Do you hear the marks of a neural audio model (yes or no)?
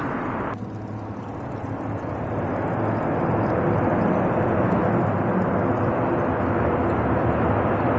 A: no